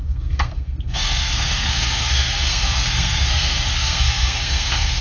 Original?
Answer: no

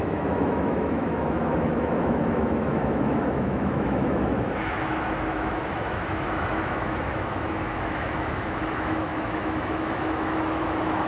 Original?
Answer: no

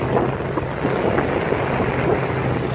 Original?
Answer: yes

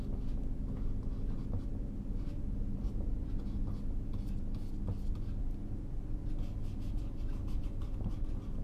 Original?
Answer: yes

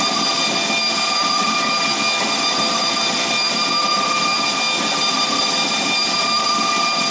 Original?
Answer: yes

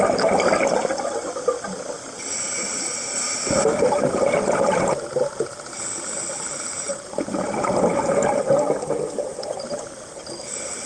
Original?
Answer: yes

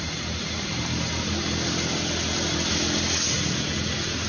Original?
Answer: yes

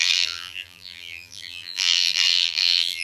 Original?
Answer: no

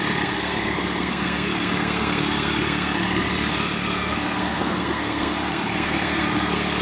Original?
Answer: no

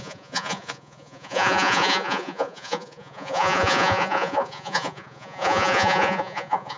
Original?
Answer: no